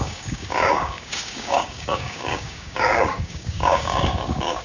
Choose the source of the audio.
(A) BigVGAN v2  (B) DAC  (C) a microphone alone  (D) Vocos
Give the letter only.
B